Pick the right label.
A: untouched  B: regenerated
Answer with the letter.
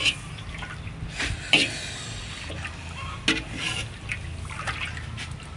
A